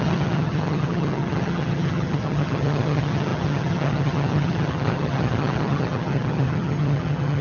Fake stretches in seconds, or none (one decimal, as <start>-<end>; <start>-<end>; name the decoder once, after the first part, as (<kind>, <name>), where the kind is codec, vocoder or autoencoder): 0.0-7.4 (vocoder, HiFi-GAN)